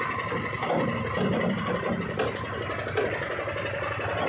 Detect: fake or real real